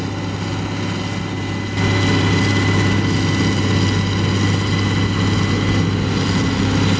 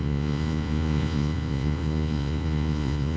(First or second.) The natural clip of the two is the first